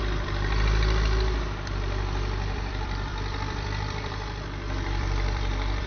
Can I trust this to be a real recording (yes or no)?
no